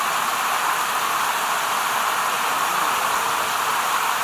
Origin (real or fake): real